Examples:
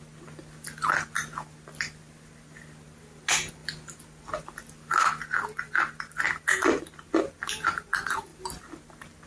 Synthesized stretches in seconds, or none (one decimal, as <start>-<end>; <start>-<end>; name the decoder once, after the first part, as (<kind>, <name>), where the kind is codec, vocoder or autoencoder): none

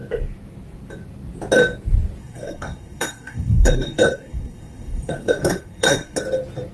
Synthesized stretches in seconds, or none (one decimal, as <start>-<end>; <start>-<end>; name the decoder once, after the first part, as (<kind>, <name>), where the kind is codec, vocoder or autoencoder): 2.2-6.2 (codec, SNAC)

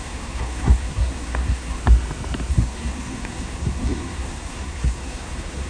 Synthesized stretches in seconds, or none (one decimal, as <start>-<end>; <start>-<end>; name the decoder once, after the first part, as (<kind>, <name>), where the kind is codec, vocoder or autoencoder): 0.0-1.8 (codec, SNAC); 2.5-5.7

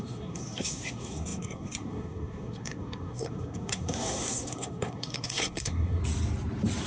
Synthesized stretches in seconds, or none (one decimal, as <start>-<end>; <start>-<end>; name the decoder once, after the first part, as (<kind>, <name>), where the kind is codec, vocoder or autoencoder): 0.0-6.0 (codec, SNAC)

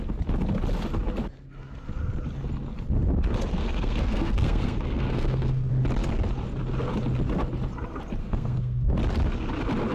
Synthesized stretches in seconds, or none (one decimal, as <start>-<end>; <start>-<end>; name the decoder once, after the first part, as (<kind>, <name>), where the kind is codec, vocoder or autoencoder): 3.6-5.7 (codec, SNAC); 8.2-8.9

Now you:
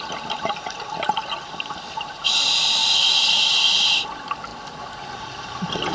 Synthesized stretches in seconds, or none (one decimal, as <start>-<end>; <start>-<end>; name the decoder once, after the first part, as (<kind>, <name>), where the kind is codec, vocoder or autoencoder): none

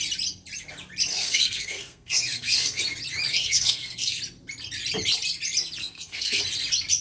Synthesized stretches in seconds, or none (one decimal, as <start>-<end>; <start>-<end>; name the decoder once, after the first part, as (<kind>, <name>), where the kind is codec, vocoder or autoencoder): 1.1-2.8 (codec, SNAC); 3.3-4.2; 5.8-6.4